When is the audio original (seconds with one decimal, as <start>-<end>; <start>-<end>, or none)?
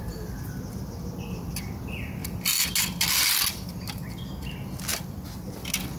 0.0-6.0